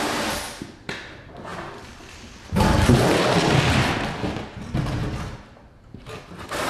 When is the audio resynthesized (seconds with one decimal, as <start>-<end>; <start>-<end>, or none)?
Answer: 1.5-3.2; 5.0-5.7